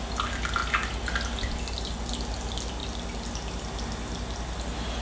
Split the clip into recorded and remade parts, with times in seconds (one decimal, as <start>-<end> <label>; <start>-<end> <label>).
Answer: 0.0-5.0 recorded